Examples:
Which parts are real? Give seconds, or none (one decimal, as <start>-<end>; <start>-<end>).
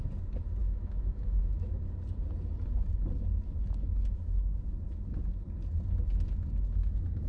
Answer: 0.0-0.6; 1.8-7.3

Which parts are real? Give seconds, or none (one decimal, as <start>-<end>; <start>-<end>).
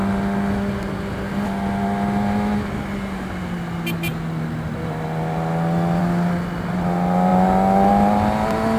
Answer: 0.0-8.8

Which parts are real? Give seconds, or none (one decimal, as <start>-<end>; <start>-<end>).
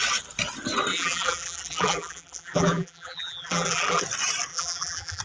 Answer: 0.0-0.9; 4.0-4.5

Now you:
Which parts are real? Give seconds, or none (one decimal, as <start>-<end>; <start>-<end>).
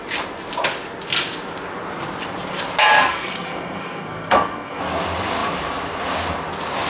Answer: 0.0-3.1; 4.8-6.9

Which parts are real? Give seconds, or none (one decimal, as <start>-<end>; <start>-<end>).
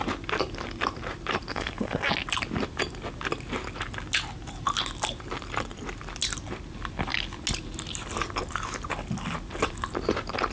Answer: 0.0-1.5; 2.1-10.5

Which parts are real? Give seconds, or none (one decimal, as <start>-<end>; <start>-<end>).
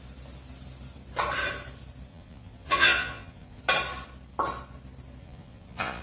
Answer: 0.0-2.1; 3.6-5.2